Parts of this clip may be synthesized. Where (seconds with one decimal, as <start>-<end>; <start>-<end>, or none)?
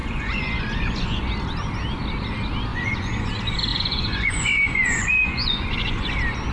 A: 0.0-1.3; 2.7-3.3; 3.7-6.1